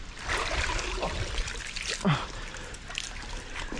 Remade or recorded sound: remade